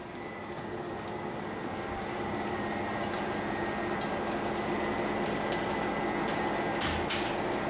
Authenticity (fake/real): real